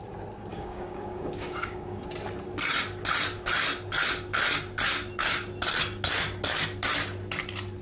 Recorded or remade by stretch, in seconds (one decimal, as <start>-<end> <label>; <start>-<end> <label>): 0.0-0.5 recorded; 0.5-2.0 remade; 2.0-7.8 recorded